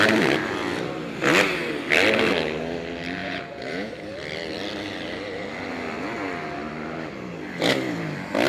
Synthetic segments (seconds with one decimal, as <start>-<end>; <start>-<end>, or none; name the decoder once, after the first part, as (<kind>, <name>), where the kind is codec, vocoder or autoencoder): 3.2-3.9 (vocoder, Vocos)